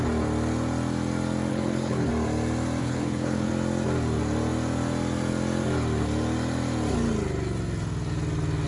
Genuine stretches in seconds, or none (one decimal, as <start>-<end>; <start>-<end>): 0.0-1.5; 2.1-2.8; 3.5-8.7